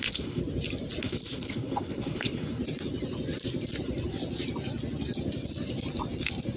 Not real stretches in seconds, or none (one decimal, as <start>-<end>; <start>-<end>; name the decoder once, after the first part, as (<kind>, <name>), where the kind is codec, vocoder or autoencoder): 0.0-0.4 (codec, HILCodec); 1.0-2.6